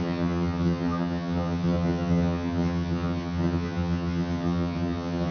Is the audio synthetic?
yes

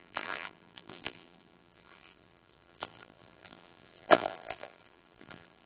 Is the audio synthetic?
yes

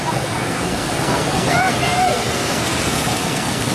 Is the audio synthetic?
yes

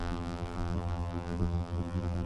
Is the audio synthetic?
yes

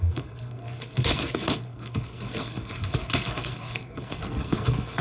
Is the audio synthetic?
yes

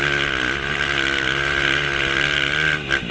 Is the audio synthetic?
no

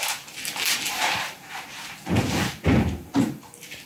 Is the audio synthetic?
no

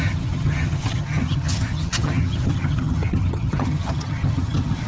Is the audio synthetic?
yes